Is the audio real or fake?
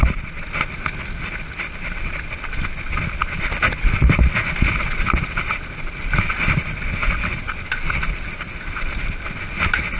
real